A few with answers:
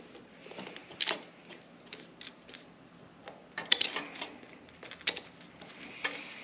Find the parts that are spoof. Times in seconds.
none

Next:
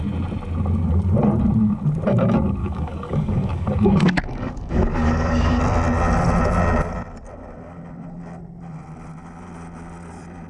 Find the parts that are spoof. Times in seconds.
2.6-5.6